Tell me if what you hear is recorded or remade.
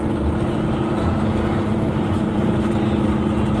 recorded